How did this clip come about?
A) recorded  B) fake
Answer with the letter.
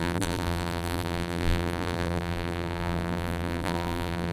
B